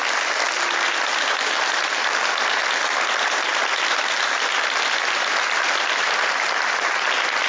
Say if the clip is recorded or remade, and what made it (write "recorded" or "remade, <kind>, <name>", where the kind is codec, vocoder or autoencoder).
recorded